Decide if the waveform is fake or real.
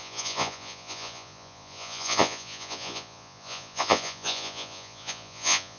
fake